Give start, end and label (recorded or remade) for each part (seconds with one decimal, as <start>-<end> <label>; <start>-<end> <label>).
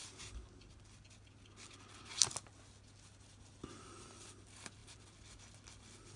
0.0-6.2 recorded